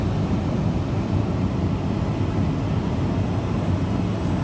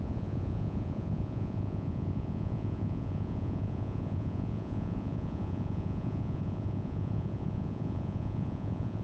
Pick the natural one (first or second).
first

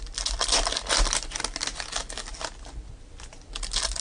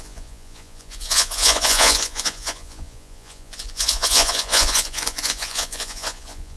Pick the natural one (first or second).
first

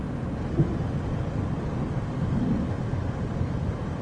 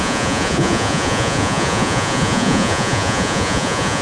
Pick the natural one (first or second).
first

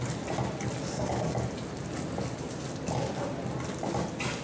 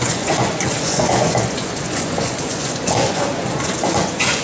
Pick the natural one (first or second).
first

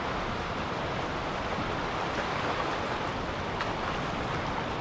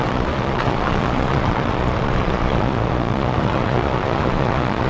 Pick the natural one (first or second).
first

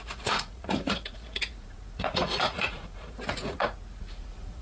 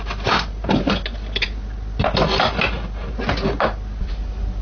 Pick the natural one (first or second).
second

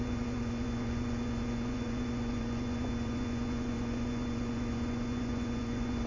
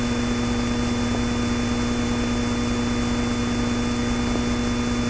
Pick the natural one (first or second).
second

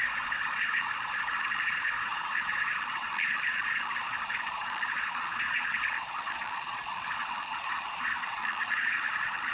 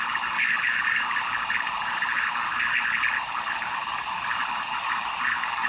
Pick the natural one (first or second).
second